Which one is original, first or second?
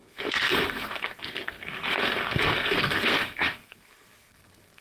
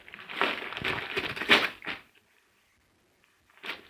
second